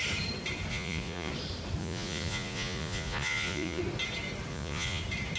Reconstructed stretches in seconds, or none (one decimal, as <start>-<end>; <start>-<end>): 0.7-1.3; 1.8-3.8; 4.5-5.0